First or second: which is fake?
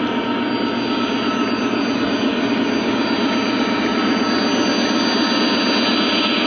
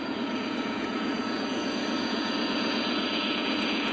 second